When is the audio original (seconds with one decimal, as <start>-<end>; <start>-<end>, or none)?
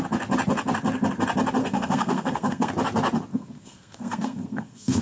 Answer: 0.0-1.6; 2.7-3.3